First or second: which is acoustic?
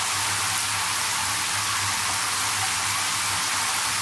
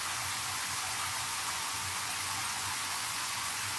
first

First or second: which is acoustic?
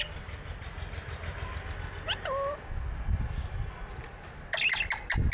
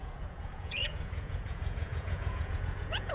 first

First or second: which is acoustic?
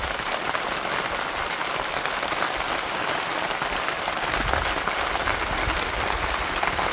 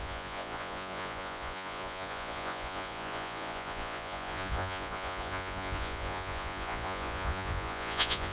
first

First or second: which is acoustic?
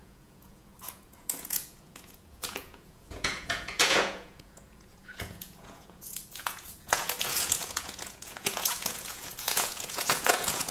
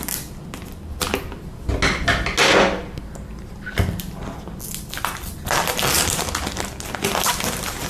second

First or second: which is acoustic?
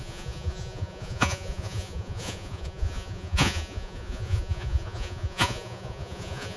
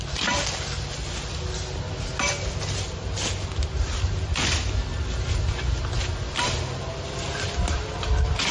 second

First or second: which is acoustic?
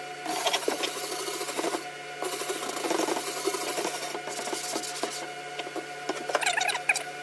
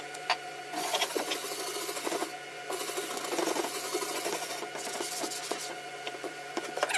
first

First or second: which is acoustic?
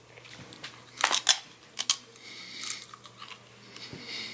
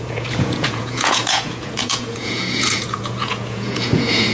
first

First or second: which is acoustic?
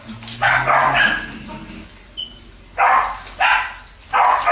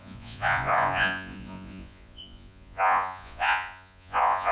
first